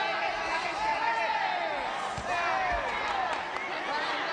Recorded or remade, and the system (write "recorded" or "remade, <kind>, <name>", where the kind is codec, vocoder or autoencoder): recorded